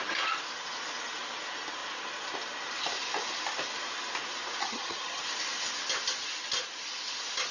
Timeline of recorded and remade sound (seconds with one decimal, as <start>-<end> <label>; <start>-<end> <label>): 0.0-4.6 recorded; 4.6-5.2 remade; 5.2-7.5 recorded